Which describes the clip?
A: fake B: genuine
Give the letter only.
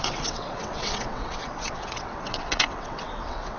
A